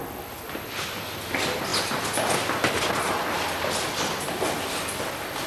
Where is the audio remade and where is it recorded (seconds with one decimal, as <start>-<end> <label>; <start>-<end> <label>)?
0.0-5.5 recorded